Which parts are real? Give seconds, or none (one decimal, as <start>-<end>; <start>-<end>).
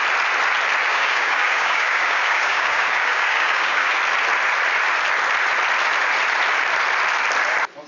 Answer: 0.0-0.9; 3.9-7.9